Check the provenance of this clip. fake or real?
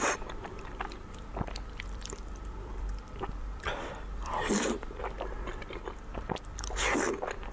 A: fake